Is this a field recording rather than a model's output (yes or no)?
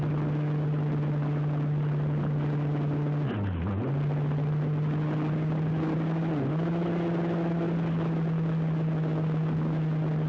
yes